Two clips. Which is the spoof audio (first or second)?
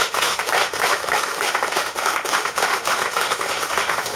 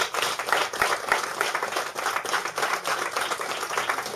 first